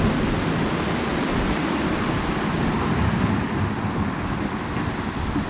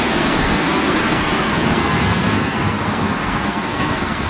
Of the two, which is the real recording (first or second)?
first